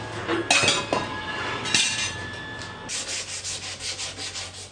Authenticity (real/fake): real